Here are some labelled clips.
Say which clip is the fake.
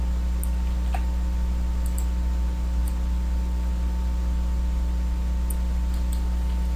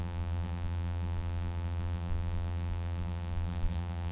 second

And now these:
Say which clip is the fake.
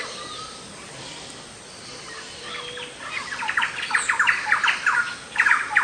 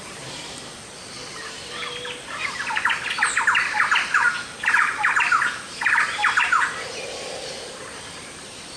second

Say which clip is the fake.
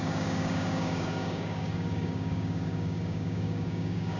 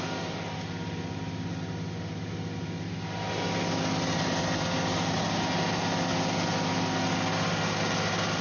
first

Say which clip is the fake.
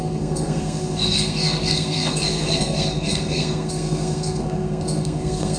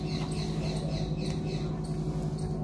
first